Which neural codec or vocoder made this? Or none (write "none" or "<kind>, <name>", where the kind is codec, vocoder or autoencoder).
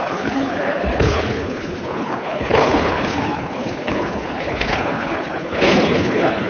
codec, HILCodec